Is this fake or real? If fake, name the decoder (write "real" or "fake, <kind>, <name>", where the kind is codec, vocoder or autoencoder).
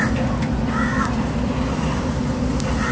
real